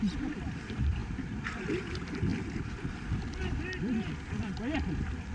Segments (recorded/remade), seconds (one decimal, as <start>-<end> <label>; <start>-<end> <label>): 0.0-2.3 remade; 2.3-3.4 recorded; 3.4-5.3 remade